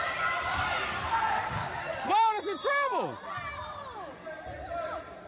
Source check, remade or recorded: recorded